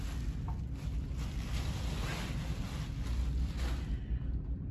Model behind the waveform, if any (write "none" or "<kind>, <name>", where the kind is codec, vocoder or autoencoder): none